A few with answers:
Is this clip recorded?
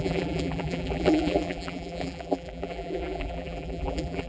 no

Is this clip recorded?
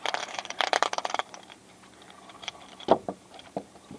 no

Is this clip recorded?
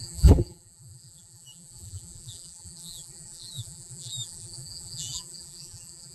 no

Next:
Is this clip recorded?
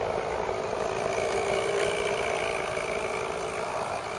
no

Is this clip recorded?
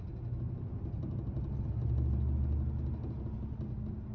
yes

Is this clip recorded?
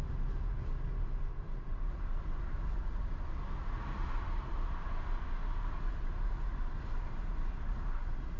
no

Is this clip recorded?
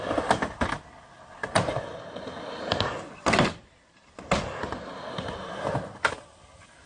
yes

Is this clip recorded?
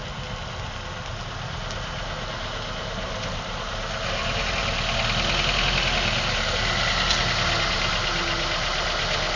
yes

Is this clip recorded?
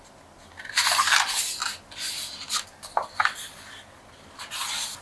yes